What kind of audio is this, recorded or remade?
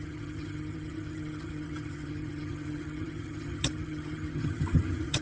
remade